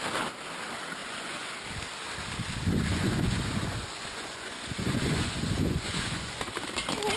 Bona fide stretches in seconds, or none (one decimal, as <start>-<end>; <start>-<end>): 0.0-1.0; 1.5-2.9; 6.5-7.2